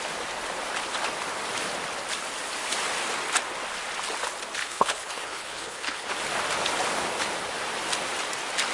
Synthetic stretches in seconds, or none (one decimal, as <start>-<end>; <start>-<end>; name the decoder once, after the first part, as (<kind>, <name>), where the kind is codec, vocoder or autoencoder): 4.6-6.1 (codec, HILCodec)